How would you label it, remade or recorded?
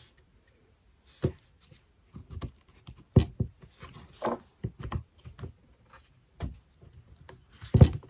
recorded